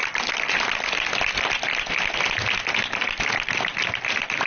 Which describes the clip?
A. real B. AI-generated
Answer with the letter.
A